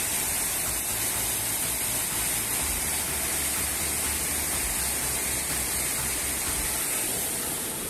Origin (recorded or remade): recorded